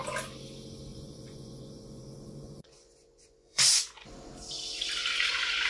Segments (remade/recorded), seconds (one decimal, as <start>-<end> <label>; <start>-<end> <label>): 0.0-0.9 recorded; 0.9-4.3 remade; 4.3-5.7 recorded

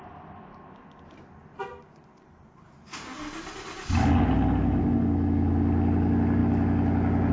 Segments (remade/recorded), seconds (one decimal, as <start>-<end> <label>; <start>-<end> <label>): 0.0-7.3 recorded

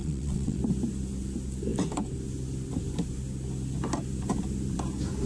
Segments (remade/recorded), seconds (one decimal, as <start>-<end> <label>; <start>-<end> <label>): 0.0-0.6 remade; 0.6-5.3 recorded

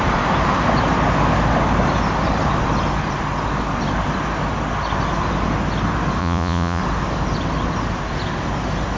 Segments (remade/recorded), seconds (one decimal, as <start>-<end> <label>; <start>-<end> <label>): 0.0-6.2 recorded; 6.2-6.8 remade; 6.8-9.0 recorded